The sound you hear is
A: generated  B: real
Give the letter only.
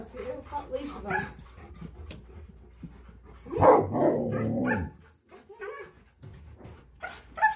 B